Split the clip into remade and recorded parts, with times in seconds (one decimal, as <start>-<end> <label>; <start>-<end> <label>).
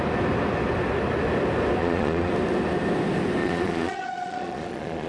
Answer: 0.0-1.8 recorded; 1.8-2.3 remade; 2.3-3.4 recorded; 3.4-5.1 remade